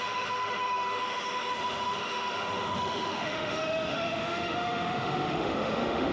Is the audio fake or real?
fake